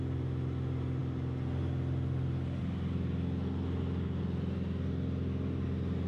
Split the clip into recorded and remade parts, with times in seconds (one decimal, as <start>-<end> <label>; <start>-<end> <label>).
0.0-6.1 recorded